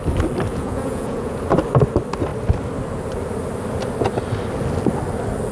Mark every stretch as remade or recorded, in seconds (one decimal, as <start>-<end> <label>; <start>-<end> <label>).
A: 0.0-0.5 recorded; 0.5-1.4 remade; 1.4-5.5 recorded